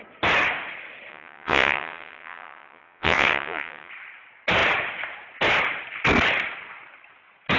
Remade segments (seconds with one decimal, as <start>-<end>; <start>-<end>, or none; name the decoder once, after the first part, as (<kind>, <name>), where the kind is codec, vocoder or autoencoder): 1.1-3.9 (vocoder, WaveNeXt)